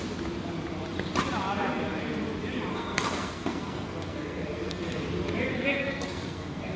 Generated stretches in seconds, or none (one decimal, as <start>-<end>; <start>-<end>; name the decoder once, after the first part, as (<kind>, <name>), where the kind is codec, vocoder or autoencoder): 2.7-5.0 (codec, SNAC); 5.5-6.8